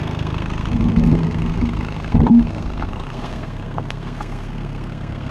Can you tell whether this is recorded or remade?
remade